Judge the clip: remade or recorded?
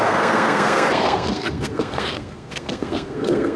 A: remade